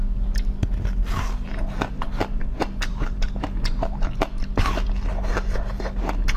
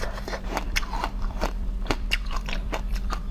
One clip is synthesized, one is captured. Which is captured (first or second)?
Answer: first